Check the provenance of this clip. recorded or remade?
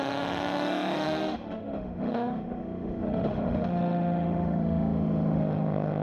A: remade